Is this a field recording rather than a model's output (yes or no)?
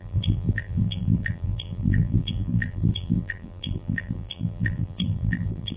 no